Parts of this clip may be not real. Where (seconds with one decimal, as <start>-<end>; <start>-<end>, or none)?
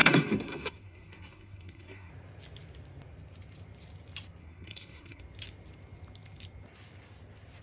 0.0-2.1; 4.4-5.2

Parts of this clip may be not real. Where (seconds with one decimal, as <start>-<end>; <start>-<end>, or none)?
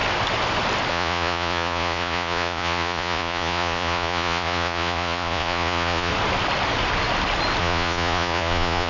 0.9-6.1; 7.6-8.9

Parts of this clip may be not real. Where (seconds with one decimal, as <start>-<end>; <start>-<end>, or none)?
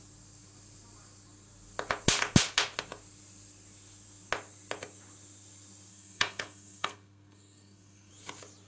5.9-8.1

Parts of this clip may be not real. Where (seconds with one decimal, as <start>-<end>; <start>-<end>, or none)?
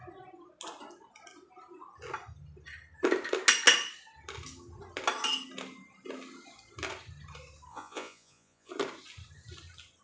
7.7-8.7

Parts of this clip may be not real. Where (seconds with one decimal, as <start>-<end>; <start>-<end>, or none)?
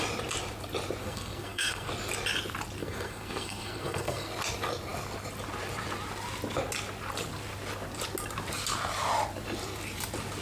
1.0-1.9; 2.8-4.3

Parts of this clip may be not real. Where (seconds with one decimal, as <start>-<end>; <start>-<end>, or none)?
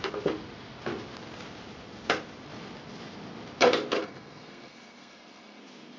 4.0-5.6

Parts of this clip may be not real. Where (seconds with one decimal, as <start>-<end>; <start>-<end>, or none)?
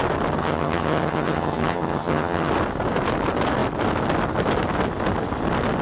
0.4-2.5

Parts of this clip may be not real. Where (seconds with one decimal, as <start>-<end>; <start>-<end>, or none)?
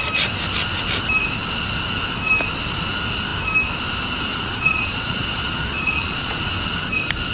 4.3-6.4